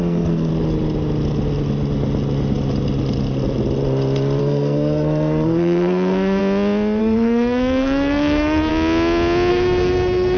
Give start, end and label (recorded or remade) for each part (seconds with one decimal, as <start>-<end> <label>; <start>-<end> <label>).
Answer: 0.0-0.5 remade; 0.5-4.4 recorded; 4.4-6.4 remade; 6.4-7.0 recorded; 7.0-8.7 remade; 8.7-9.5 recorded; 9.5-10.4 remade